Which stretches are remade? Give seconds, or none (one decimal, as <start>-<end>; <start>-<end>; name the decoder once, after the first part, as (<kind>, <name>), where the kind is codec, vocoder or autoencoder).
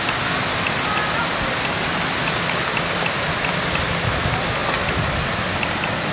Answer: 1.2-2.0 (vocoder, BigVGAN v2)